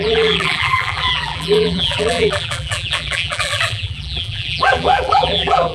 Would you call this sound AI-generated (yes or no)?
yes